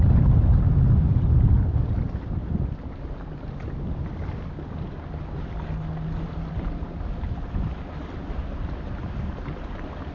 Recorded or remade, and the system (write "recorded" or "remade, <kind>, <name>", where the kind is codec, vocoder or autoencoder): recorded